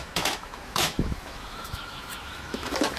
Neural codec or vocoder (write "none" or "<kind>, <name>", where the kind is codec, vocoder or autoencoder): autoencoder, DAC-VAE